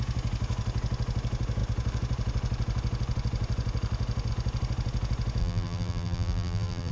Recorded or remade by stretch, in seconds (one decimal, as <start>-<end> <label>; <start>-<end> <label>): 0.0-5.4 recorded; 5.4-6.9 remade